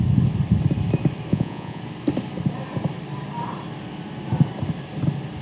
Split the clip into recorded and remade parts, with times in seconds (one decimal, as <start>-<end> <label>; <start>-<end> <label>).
0.0-1.3 recorded; 1.3-1.8 remade; 1.8-5.4 recorded